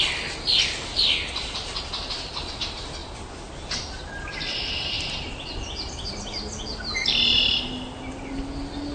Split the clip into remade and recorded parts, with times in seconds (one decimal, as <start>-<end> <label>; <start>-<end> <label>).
0.0-0.9 recorded; 0.9-1.8 remade; 1.8-3.0 recorded; 3.0-6.1 remade; 6.1-8.9 recorded